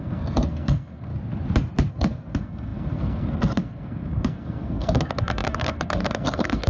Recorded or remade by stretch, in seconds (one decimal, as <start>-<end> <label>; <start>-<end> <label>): 0.0-1.1 remade; 1.1-1.9 recorded; 1.9-6.7 remade